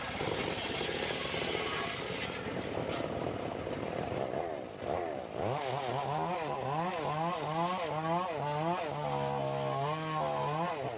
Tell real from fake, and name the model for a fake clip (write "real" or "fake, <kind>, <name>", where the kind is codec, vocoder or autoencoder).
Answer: real